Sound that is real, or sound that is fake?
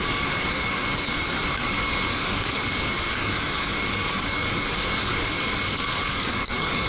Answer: fake